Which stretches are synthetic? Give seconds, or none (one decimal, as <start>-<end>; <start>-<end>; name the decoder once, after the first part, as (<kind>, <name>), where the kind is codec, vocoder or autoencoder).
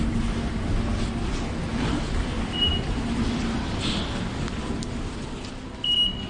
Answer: 1.7-5.5 (vocoder, BigVGAN v2)